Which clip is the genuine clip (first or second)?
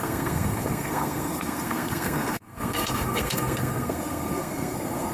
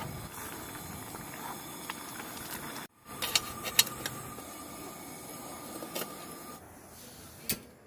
second